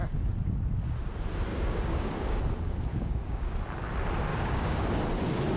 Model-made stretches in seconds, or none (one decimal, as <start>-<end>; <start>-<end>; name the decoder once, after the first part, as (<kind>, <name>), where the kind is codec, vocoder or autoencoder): 1.5-2.4 (codec, DAC); 2.9-3.5; 4.3-5.0